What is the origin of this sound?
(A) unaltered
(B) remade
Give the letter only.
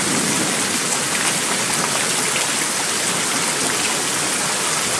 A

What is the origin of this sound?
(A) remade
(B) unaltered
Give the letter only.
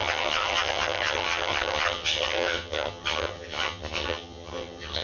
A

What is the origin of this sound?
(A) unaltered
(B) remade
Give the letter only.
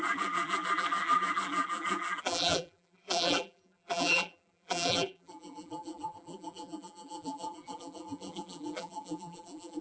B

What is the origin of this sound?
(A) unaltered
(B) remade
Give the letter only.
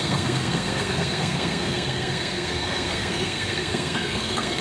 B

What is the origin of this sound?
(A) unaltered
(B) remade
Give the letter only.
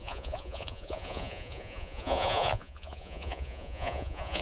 B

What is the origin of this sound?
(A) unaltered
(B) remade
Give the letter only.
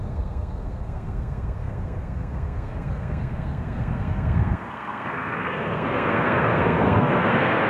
B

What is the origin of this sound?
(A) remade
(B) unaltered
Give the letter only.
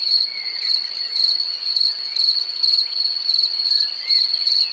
A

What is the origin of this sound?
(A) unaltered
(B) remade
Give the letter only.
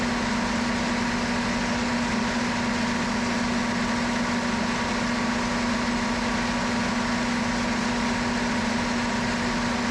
A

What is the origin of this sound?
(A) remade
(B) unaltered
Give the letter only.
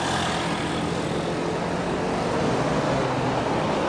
B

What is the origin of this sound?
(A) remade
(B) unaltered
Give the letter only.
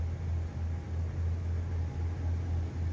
B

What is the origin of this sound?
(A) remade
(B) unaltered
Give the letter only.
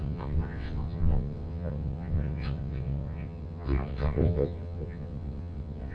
A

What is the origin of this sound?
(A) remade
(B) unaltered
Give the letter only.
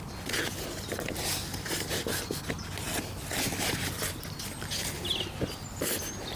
B